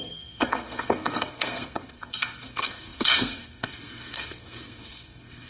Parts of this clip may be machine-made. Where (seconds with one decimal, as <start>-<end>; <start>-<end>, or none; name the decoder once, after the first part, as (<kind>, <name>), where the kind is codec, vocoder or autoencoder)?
0.0-5.5 (codec, SNAC)